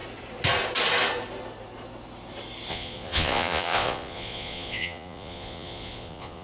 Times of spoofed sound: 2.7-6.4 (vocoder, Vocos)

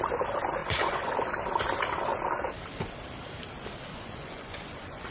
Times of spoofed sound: 0.6-1.1 (vocoder, Vocos); 3.9-5.1

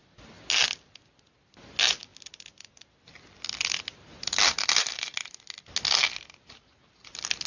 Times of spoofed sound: none

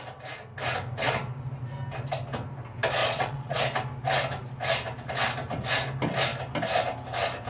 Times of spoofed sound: 3.0-3.6 (vocoder, Vocos)

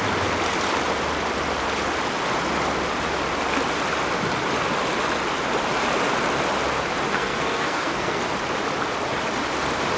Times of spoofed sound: 7.1-8.2 (codec, SNAC)

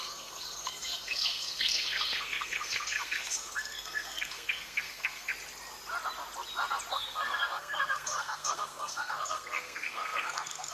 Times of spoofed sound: 0.0-5.3 (codec, SNAC); 6.9-10.7

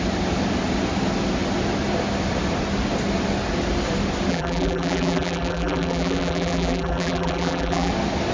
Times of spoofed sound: 4.3-7.9 (vocoder, BigVGAN v2)